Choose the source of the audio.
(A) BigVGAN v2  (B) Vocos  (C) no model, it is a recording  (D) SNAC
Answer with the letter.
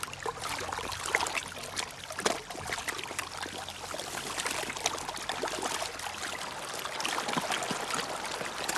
C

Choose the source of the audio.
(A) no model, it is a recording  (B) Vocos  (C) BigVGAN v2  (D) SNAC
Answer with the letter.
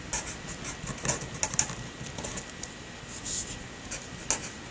A